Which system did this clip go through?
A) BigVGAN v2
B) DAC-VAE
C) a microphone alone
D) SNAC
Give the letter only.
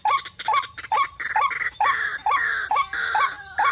C